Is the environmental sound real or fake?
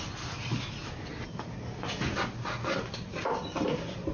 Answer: real